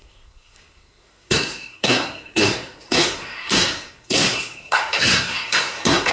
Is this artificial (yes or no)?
yes